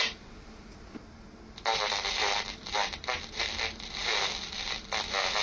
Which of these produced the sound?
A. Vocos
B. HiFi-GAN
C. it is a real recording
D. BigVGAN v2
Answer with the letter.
C